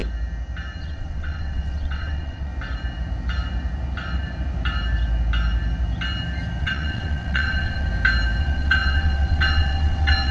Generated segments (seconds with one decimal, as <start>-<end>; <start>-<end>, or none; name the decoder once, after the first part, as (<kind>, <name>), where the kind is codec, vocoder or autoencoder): 0.8-2.5 (vocoder, WaveNeXt); 6.6-7.9; 8.4-10.3